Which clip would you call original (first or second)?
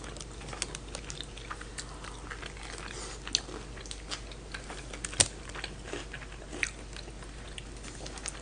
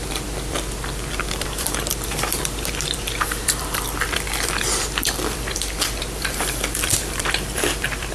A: first